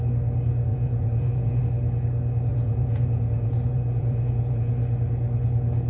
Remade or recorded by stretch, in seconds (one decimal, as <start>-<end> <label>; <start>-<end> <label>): 0.0-0.7 recorded; 0.7-1.6 remade; 1.6-2.5 recorded; 2.5-4.7 remade; 4.7-5.9 recorded